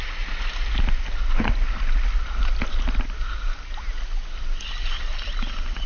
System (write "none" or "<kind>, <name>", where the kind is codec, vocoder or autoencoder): none